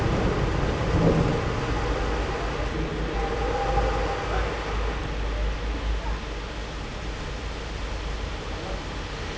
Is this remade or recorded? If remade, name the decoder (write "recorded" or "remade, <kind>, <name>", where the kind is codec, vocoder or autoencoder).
recorded